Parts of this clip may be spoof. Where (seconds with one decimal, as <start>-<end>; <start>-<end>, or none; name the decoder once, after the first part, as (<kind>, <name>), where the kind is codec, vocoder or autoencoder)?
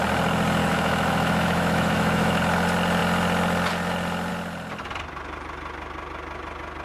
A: 0.6-2.4 (autoencoder, DAC-VAE)